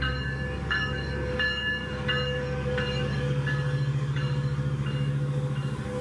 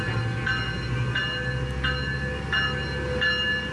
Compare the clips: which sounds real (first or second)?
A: second